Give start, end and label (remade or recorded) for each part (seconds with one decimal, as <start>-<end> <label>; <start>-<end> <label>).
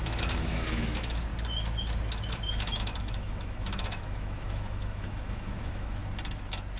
0.0-1.3 remade; 1.3-2.3 recorded; 2.3-6.0 remade; 6.0-6.8 recorded